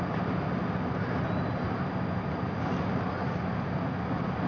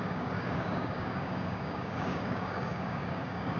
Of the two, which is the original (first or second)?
first